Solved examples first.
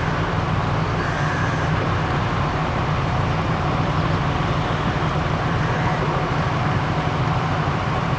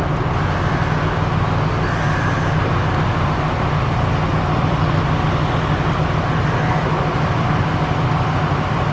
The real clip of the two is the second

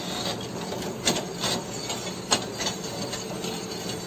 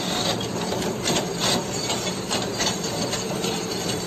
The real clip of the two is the first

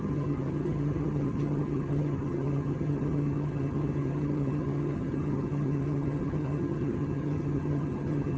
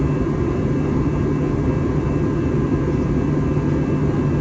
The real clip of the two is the second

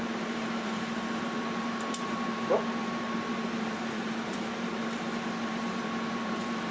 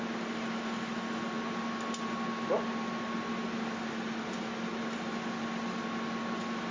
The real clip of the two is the second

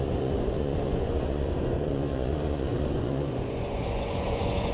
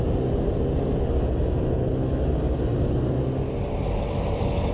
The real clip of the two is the second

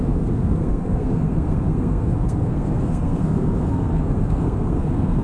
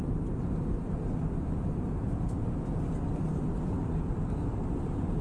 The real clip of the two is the second